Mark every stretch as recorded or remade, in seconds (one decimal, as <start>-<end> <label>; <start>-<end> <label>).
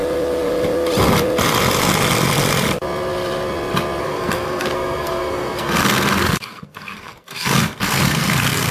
0.0-4.0 recorded; 4.0-8.7 remade